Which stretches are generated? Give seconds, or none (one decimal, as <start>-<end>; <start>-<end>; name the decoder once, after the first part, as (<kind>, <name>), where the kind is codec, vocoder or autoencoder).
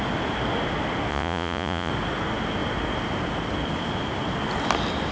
1.1-1.9 (vocoder, Vocos)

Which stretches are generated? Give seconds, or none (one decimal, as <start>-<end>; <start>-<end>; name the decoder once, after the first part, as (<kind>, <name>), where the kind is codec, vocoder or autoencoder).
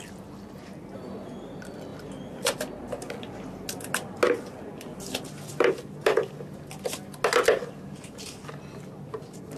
none